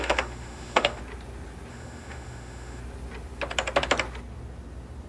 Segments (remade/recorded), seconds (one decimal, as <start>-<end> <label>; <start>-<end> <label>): 0.0-1.0 remade; 1.0-1.7 recorded; 1.7-2.8 remade; 2.8-5.1 recorded